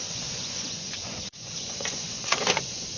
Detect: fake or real fake